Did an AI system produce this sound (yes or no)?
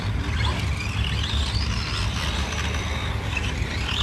no